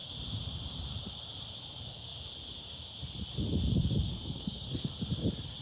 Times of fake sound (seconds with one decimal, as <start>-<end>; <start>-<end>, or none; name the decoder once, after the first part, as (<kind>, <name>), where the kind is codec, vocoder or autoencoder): 4.1-4.9 (codec, SNAC)